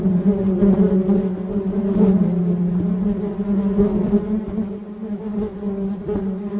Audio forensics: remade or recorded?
recorded